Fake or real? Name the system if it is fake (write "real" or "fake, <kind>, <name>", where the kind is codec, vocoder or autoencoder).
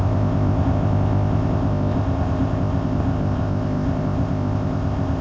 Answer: fake, codec, ZipCodec